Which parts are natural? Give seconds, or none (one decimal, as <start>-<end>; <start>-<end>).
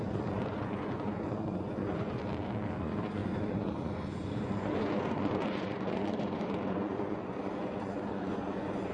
2.2-2.8